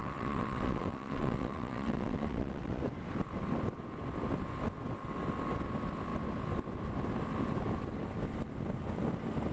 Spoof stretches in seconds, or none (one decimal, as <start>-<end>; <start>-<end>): 0.0-2.8